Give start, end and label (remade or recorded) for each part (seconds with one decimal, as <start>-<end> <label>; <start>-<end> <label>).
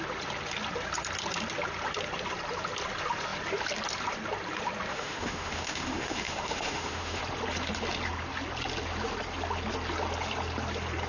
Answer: 0.0-4.9 recorded; 4.9-7.2 remade; 7.2-11.1 recorded